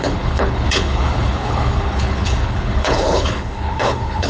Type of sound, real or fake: fake